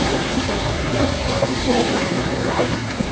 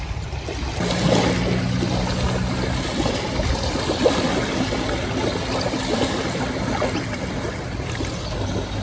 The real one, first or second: second